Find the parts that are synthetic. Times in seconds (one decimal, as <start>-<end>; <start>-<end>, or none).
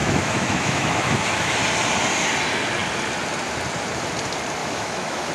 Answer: 0.0-1.5; 4.6-5.3